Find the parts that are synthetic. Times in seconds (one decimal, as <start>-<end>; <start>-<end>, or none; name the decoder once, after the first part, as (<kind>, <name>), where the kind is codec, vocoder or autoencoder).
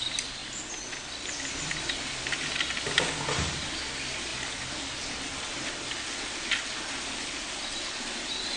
none